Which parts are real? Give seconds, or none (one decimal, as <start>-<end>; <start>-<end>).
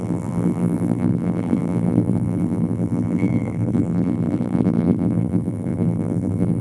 none